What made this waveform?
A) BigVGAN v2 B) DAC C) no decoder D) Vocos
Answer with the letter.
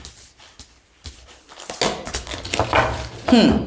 C